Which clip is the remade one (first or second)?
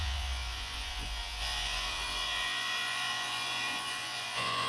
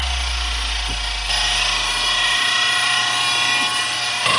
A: first